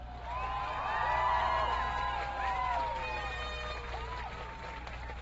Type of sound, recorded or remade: recorded